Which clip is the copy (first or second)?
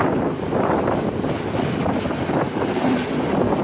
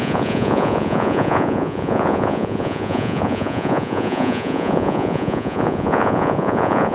second